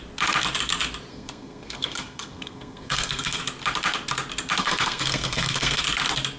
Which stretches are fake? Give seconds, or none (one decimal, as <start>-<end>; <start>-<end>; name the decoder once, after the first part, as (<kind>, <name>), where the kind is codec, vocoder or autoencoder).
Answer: 1.1-3.4 (codec, SNAC); 4.6-5.8